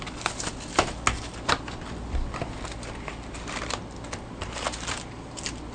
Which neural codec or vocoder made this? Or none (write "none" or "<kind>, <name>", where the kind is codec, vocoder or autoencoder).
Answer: none